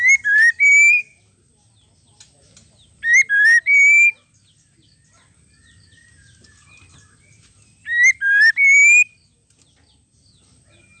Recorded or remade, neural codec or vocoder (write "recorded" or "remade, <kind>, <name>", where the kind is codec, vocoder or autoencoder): recorded